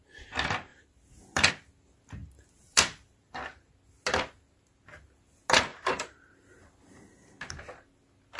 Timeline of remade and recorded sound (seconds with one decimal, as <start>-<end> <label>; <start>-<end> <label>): 0.0-0.7 recorded; 0.7-1.5 remade; 1.5-2.2 recorded; 2.2-3.4 remade; 3.4-5.7 recorded; 5.7-6.3 remade; 6.3-8.4 recorded